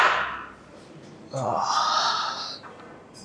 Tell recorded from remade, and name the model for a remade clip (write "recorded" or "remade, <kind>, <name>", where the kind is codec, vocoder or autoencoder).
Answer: recorded